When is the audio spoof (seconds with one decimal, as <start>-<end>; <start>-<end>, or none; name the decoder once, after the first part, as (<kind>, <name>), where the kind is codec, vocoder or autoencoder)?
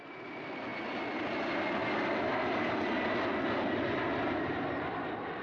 none